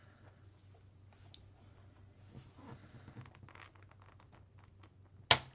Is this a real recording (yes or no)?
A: yes